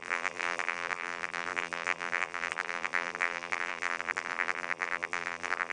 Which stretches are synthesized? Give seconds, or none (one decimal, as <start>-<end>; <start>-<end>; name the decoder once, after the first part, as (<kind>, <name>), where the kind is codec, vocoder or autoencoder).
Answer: 0.0-5.7 (vocoder, BigVGAN v2)